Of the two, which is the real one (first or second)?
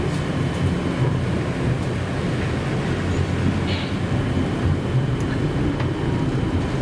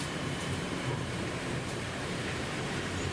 first